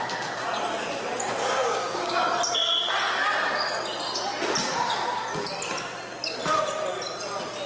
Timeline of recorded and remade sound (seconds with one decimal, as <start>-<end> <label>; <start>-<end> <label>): 0.0-1.4 recorded; 1.4-2.1 remade; 2.1-7.7 recorded